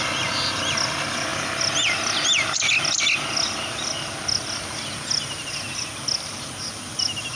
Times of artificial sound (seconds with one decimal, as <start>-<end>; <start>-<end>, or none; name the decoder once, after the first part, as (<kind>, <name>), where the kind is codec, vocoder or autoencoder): none

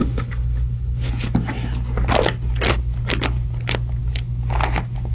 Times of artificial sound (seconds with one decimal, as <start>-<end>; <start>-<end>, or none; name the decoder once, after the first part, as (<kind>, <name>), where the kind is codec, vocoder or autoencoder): 0.0-1.1 (codec, HILCodec)

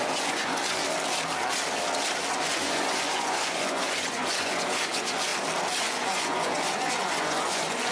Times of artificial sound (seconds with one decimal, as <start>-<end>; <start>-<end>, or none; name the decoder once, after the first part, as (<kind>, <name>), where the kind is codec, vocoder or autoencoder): 0.0-0.8 (vocoder, Vocos); 2.4-5.3; 5.8-7.9

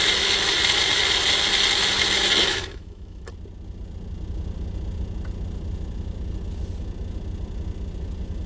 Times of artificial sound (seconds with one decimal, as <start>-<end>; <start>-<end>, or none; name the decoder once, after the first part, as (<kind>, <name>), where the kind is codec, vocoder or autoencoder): 2.5-3.3 (autoencoder, DAC-VAE)

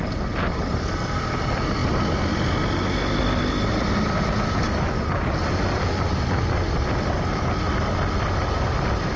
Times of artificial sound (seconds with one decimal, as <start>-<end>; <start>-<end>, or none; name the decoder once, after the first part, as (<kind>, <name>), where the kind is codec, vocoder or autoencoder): none

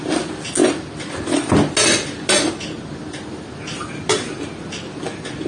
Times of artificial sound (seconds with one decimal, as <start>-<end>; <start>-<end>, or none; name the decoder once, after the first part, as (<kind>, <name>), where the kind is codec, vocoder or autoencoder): none

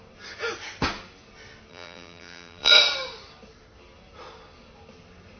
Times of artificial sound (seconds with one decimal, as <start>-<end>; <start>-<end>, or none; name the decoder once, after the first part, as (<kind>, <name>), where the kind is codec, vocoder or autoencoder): 1.7-2.7 (vocoder, BigVGAN v2)

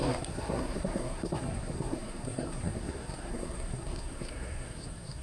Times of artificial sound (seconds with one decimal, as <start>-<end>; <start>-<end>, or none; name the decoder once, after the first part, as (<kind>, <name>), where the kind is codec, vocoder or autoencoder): 0.0-5.2 (codec, SNAC)